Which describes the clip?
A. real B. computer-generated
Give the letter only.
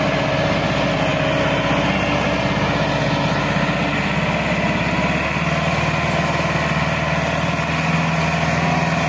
A